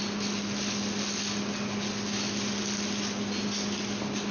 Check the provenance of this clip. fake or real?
real